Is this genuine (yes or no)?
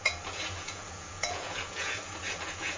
no